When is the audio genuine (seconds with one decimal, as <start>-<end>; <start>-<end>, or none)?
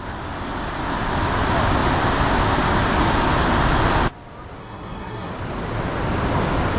0.0-4.6; 5.3-6.8